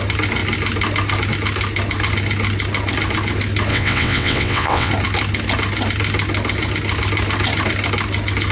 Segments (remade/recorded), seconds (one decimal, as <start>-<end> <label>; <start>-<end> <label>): 0.0-3.7 recorded; 3.7-4.9 remade; 4.9-8.5 recorded